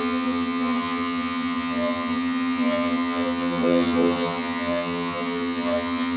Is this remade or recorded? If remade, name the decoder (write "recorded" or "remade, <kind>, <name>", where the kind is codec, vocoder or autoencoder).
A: remade, vocoder, HiFi-GAN